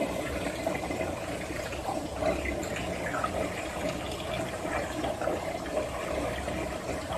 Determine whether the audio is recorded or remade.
recorded